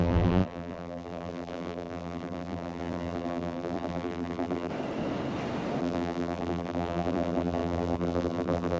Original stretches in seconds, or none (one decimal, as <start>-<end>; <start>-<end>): 4.7-5.8